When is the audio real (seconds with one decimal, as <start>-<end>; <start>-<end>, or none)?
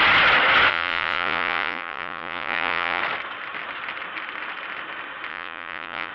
0.0-0.7; 3.0-5.3